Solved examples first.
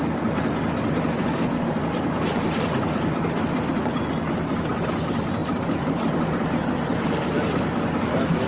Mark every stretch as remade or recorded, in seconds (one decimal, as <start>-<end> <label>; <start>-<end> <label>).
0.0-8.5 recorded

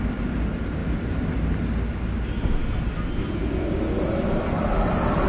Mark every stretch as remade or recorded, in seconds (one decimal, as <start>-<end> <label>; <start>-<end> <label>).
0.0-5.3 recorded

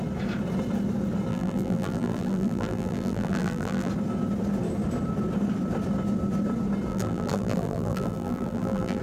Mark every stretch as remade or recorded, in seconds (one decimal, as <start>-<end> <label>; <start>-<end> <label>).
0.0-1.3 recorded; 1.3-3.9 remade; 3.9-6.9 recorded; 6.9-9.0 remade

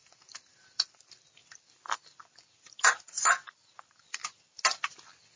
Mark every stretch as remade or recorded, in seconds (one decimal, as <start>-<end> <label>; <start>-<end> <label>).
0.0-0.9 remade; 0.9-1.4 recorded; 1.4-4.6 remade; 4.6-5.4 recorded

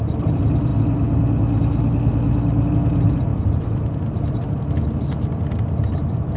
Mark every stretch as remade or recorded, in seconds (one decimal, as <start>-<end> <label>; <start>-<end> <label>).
0.0-0.7 remade; 0.7-2.7 recorded; 2.7-3.3 remade; 3.3-5.4 recorded; 5.4-6.4 remade